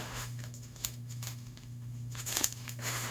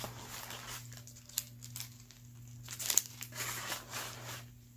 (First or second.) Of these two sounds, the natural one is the second